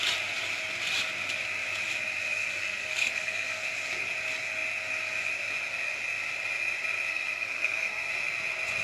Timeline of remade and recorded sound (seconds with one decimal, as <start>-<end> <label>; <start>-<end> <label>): 0.0-2.6 recorded; 2.6-3.5 remade; 3.5-7.1 recorded; 7.1-8.1 remade; 8.1-8.8 recorded